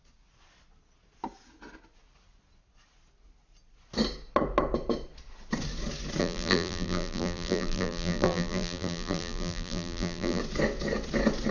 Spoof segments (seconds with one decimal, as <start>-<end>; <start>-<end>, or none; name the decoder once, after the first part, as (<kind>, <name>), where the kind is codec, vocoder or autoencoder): 6.2-10.4 (vocoder, BigVGAN v2)